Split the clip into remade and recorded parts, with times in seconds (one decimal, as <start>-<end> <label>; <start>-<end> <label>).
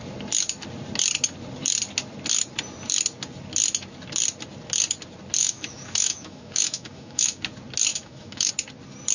0.0-5.4 recorded; 5.4-7.4 remade; 7.4-7.9 recorded; 7.9-8.5 remade; 8.5-9.1 recorded